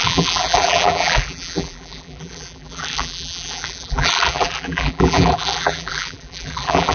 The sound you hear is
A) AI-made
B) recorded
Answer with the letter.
A